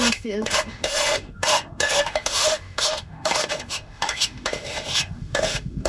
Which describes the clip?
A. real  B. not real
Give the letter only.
B